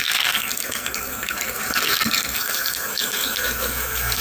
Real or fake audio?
fake